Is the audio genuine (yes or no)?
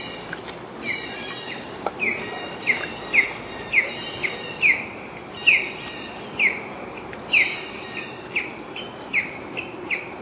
yes